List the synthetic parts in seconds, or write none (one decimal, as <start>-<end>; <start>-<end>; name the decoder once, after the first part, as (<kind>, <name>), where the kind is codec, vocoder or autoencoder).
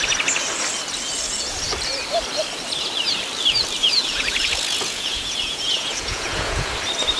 3.8-6.7 (vocoder, Vocos)